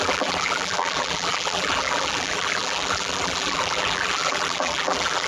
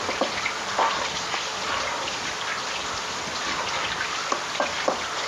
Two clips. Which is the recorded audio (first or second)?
second